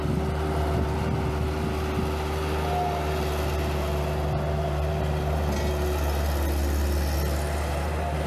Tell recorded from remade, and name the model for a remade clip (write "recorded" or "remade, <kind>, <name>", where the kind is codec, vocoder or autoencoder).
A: recorded